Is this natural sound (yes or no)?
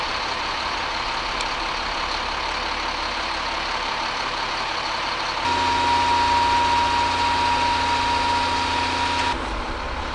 yes